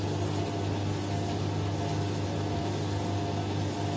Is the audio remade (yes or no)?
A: no